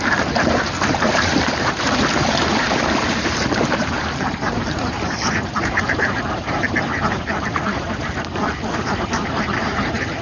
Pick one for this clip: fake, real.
fake